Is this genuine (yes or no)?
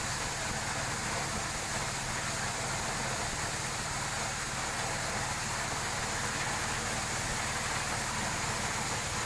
yes